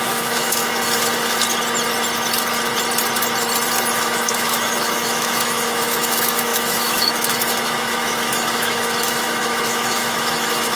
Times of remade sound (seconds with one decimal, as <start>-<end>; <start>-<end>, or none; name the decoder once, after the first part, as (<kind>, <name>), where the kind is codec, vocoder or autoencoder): 0.0-0.6 (autoencoder, DAC-VAE); 3.9-10.8